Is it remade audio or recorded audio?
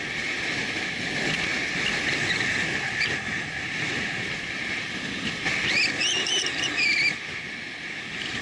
recorded